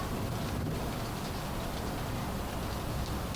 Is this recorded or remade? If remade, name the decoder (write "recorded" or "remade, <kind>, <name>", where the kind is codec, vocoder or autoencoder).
recorded